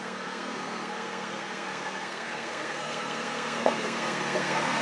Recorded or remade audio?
remade